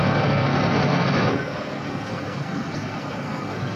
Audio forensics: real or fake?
fake